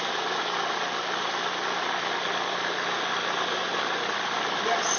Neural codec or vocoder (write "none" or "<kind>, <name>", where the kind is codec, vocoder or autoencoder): none